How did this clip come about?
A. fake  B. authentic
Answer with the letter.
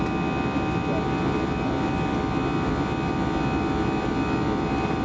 B